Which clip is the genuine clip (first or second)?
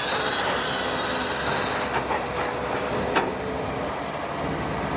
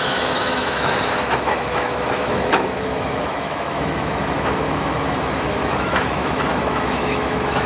first